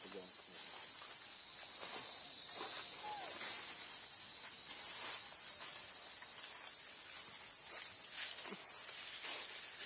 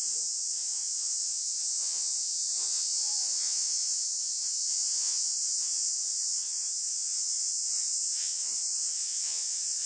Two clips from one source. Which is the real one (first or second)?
first